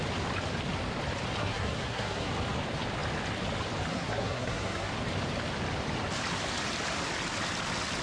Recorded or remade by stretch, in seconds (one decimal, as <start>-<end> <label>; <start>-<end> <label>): 0.0-1.4 recorded; 1.4-2.3 remade; 2.3-3.9 recorded; 3.9-4.9 remade; 4.9-8.0 recorded